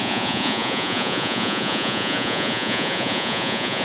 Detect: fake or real fake